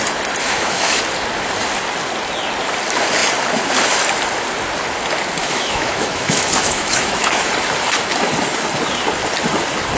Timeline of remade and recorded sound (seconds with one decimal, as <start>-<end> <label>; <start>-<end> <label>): 0.0-0.4 recorded; 0.4-1.0 remade; 1.0-5.4 recorded; 5.4-7.5 remade; 7.5-10.0 recorded